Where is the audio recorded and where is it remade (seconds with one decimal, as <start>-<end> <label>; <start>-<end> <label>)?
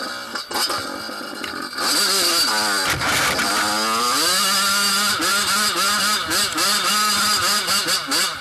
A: 0.0-8.4 recorded